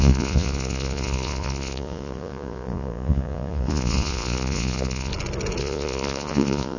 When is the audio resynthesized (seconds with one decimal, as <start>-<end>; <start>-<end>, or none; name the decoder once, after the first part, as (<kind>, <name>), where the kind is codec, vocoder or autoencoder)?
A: 0.0-5.1 (vocoder, Vocos); 5.6-6.8